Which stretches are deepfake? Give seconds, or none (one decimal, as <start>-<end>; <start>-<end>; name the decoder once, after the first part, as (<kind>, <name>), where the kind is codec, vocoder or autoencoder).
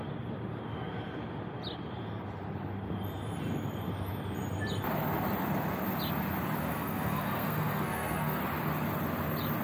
6.7-8.4 (codec, SNAC)